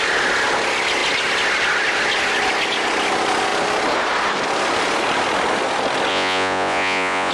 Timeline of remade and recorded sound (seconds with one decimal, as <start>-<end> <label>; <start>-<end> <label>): 0.0-6.1 recorded; 6.1-7.3 remade